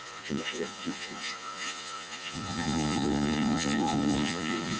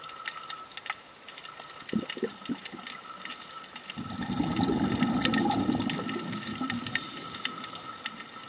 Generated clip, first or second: first